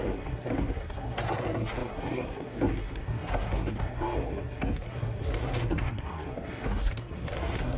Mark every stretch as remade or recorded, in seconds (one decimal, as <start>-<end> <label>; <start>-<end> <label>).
0.0-7.8 remade